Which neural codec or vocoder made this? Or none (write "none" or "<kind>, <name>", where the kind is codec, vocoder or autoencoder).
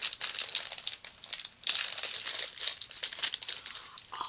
none